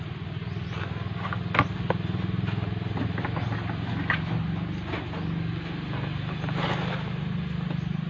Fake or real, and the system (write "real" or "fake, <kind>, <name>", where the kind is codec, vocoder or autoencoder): real